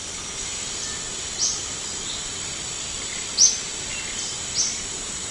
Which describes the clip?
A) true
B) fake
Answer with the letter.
B